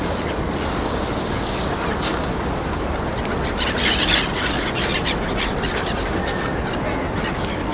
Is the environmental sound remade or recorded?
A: recorded